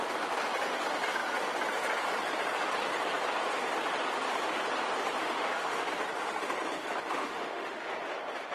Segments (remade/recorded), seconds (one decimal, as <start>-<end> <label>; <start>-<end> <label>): 0.0-5.2 recorded; 5.2-5.9 remade; 5.9-7.2 recorded; 7.2-7.9 remade; 7.9-8.5 recorded